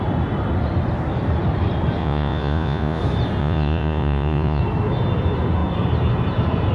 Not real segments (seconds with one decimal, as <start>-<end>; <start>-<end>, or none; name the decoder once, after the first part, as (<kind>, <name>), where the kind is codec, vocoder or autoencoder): 2.0-3.0 (vocoder, Vocos); 3.4-4.6